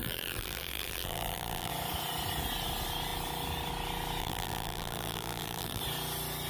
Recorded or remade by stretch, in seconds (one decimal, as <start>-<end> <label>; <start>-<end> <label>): 0.0-1.7 remade; 1.7-4.2 recorded; 4.2-5.8 remade; 5.8-6.5 recorded